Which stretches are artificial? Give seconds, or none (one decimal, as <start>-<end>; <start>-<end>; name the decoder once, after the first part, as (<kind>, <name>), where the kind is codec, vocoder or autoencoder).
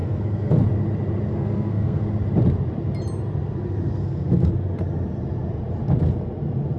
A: 0.0-0.6 (codec, SNAC); 1.3-2.0; 4.0-4.5